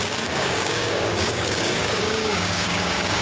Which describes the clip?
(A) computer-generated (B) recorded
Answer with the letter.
A